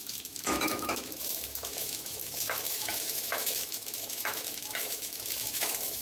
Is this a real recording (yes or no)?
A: no